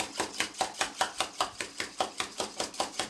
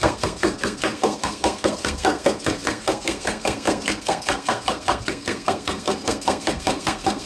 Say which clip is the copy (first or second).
second